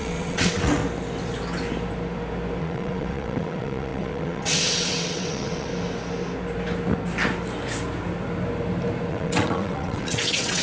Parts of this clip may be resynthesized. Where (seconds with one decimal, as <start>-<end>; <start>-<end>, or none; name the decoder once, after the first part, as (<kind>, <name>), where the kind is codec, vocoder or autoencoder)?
0.0-0.8 (vocoder, WaveNeXt); 2.6-5.7; 9.1-10.6